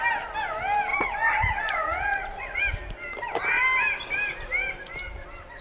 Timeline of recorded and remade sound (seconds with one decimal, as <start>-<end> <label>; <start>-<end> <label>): 0.0-0.9 recorded; 0.9-2.6 remade; 2.6-5.6 recorded